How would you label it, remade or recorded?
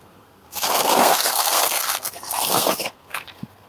remade